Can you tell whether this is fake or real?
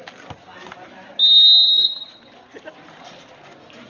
real